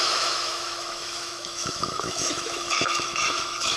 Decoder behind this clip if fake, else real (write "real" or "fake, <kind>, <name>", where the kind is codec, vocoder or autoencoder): fake, autoencoder, DAC-VAE